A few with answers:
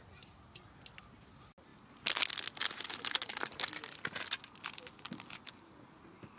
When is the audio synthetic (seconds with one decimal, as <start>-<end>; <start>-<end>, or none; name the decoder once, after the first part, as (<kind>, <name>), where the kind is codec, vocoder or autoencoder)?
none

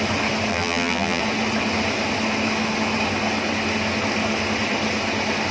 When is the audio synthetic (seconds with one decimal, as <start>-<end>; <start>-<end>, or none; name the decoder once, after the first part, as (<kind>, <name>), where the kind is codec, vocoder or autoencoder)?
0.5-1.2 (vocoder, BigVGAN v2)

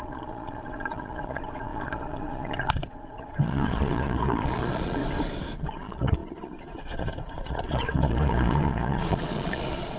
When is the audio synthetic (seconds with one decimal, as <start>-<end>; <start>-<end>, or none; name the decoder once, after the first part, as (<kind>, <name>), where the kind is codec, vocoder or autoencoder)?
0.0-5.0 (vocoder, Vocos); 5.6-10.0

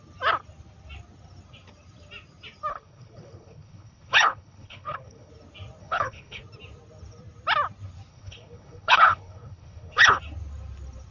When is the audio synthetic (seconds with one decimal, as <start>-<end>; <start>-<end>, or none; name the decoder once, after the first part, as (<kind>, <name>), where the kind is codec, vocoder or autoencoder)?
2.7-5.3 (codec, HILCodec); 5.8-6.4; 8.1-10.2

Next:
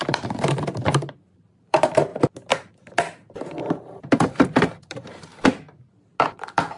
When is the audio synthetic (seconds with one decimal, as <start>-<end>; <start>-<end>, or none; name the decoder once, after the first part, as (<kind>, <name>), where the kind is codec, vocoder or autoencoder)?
0.0-2.1 (vocoder, BigVGAN v2); 3.6-5.3; 6.2-6.8